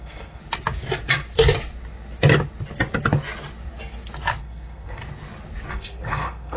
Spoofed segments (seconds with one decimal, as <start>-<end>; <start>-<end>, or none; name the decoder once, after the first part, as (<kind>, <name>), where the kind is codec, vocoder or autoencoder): 0.0-0.4 (codec, SNAC); 4.4-5.0; 5.7-6.6